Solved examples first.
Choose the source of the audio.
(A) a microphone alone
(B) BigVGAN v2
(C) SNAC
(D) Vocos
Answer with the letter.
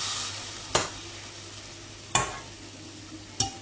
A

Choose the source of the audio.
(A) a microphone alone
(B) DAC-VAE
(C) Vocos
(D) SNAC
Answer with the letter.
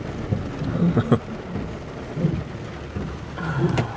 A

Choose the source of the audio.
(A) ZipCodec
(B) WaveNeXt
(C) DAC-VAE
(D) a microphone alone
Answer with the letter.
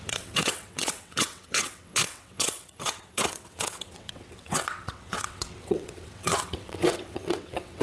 B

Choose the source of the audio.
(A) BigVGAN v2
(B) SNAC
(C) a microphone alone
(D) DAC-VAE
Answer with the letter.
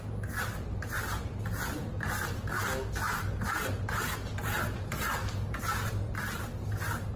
C